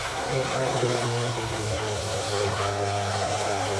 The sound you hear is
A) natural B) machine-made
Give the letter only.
B